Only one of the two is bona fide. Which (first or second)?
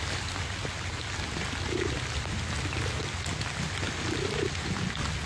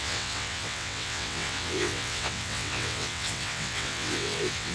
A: first